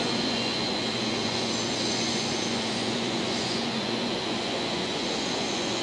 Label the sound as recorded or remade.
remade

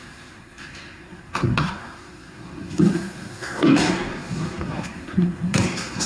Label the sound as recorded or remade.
remade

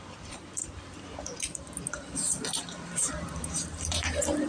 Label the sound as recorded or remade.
remade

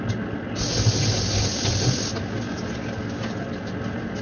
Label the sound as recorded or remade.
recorded